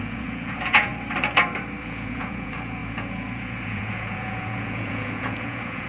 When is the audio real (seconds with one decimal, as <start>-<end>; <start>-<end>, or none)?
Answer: 0.9-1.8

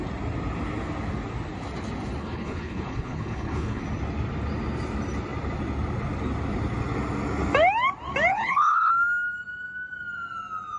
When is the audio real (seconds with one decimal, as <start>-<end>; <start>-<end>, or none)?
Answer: 0.0-2.2; 3.8-8.3; 8.9-10.8

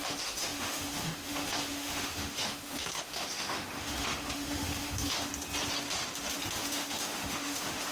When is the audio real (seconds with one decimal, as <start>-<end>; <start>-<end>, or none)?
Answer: 5.3-6.5

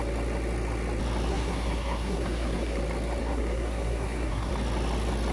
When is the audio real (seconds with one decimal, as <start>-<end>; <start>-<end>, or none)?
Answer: 0.0-1.3; 2.8-3.2; 4.5-5.3

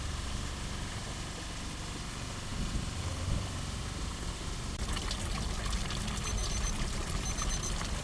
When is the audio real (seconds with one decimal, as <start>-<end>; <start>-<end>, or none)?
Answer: 0.0-6.4; 6.9-8.0